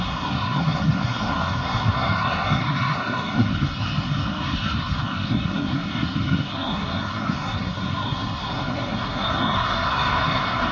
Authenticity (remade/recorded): remade